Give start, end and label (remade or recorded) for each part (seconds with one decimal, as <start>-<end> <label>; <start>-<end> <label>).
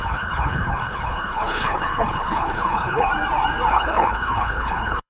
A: 0.0-3.1 remade; 3.1-3.7 recorded; 3.7-5.1 remade